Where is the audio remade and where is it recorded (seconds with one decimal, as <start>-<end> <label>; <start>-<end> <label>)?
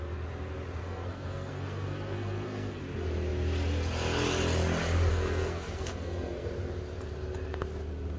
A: 0.0-0.8 recorded; 0.8-2.8 remade; 2.8-5.1 recorded; 5.1-6.5 remade; 6.5-8.2 recorded